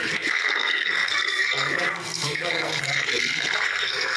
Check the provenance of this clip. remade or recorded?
remade